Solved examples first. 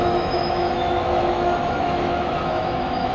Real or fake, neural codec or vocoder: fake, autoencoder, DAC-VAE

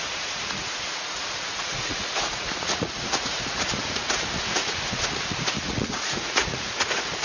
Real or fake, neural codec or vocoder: fake, vocoder, Vocos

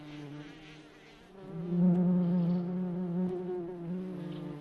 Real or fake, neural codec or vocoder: real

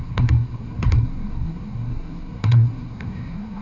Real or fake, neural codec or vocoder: fake, codec, SNAC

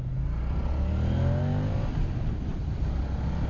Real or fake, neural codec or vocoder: real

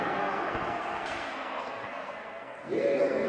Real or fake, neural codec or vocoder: fake, codec, SNAC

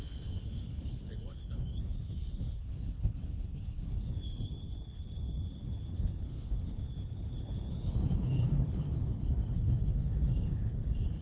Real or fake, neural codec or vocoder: fake, codec, HILCodec